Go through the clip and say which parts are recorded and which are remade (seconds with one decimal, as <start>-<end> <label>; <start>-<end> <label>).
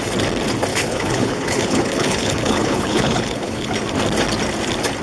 0.0-0.7 recorded; 0.7-3.7 remade; 3.7-5.0 recorded